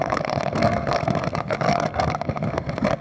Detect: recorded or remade remade